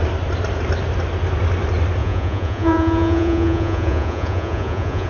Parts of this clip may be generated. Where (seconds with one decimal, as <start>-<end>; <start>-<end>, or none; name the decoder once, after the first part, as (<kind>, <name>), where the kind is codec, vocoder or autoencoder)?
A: 2.0-5.1 (vocoder, Vocos)